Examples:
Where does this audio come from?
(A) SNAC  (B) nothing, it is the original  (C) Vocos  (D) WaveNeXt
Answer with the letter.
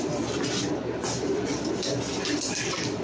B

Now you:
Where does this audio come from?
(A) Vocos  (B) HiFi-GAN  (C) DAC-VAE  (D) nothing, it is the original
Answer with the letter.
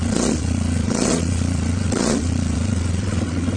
A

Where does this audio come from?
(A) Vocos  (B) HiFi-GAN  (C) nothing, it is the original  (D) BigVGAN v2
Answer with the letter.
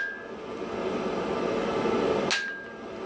C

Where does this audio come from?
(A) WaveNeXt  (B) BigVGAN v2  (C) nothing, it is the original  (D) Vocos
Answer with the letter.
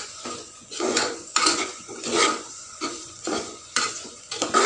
D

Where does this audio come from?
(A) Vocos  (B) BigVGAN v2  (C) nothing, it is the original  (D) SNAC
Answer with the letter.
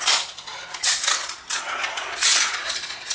A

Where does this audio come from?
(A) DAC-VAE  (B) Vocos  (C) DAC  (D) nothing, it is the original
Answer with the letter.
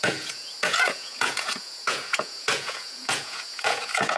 B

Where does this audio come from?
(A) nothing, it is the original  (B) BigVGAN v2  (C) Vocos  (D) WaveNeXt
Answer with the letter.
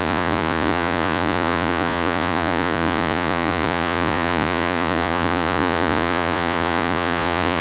C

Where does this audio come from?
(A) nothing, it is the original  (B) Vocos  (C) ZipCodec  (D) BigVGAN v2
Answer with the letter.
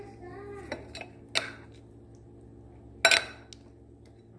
A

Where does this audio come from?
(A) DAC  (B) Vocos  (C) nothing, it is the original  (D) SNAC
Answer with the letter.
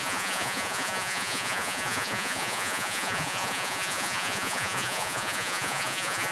B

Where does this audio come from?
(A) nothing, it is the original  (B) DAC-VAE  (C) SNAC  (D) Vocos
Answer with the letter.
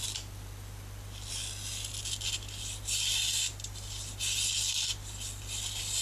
A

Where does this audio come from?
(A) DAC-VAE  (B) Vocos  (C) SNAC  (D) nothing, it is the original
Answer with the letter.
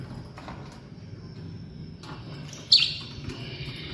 D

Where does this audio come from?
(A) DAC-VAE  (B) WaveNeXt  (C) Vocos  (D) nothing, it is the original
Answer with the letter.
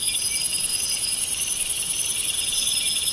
D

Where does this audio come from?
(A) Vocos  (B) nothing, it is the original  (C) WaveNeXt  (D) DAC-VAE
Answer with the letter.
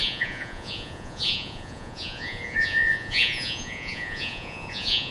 A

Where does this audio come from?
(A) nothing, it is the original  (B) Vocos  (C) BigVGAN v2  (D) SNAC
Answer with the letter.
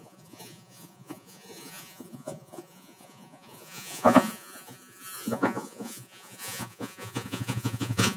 B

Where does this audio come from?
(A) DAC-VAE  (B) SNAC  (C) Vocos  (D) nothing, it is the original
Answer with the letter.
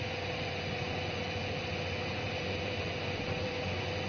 C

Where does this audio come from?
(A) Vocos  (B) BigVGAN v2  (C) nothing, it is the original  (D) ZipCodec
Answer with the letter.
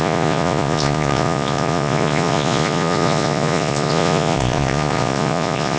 A